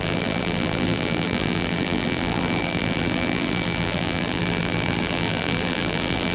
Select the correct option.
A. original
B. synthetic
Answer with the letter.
B